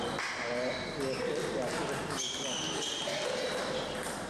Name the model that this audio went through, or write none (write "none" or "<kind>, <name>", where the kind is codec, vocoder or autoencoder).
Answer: none